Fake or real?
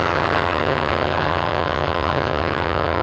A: fake